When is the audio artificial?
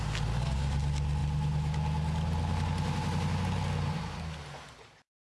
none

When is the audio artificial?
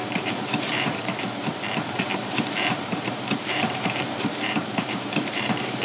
0.0-1.6 (vocoder, BigVGAN v2); 2.2-5.8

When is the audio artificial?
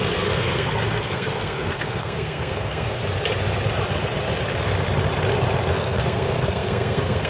0.0-3.0 (codec, SNAC); 5.7-7.3